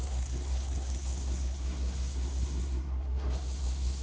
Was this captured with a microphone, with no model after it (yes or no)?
no